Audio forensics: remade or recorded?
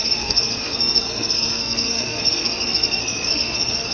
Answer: remade